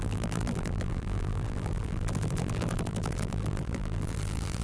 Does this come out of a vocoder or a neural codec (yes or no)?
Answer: yes